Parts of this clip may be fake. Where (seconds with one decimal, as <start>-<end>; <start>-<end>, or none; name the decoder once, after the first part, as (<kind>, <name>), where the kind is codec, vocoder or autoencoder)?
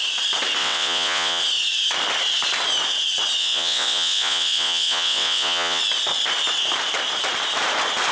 0.6-1.4 (vocoder, WaveNeXt); 3.4-5.8